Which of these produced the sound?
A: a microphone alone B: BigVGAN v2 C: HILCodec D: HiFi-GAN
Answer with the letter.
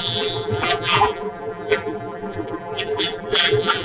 B